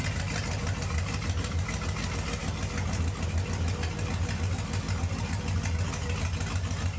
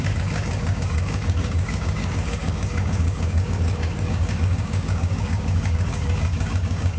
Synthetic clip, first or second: second